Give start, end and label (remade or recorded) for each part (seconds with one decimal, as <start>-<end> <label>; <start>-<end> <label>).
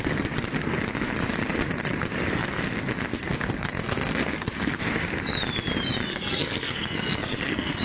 0.0-3.1 recorded; 3.1-4.8 remade; 4.8-6.1 recorded; 6.1-7.8 remade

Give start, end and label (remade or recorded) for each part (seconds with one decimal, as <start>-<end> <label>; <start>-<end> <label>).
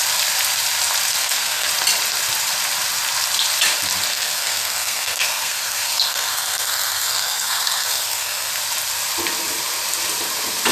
0.0-1.2 recorded; 1.2-1.7 remade; 1.7-4.1 recorded; 4.1-8.5 remade; 8.5-10.7 recorded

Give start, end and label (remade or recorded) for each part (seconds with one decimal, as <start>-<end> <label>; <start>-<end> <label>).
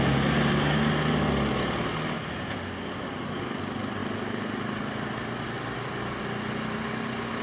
0.0-7.4 recorded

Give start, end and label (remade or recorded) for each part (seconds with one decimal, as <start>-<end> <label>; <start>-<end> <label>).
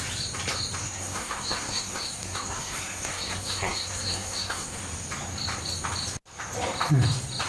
0.0-0.8 recorded; 0.8-4.8 remade; 4.8-7.5 recorded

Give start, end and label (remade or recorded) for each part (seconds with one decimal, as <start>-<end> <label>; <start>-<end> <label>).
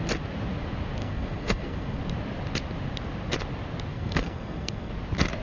0.0-1.0 recorded; 1.0-2.0 remade; 2.0-3.9 recorded; 3.9-4.9 remade; 4.9-5.4 recorded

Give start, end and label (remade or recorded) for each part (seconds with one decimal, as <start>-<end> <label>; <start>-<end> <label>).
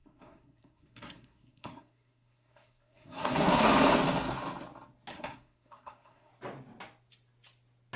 0.0-3.7 remade; 3.7-5.1 recorded; 5.1-6.3 remade; 6.3-8.0 recorded